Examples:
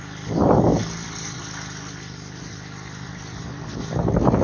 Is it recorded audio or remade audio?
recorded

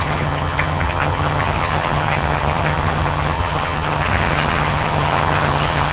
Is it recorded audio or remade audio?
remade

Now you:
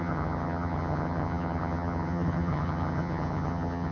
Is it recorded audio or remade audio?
remade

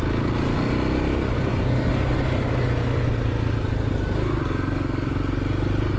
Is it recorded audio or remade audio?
recorded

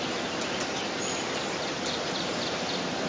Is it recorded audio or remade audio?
recorded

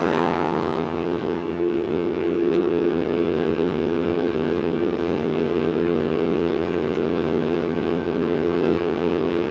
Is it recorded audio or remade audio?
remade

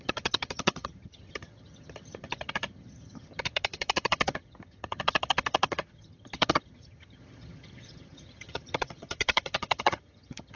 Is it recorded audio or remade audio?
remade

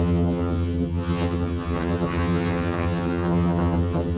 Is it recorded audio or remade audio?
remade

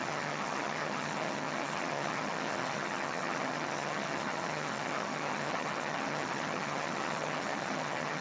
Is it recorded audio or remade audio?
remade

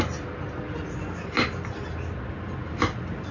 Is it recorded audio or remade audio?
recorded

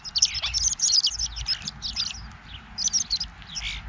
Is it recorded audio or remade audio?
recorded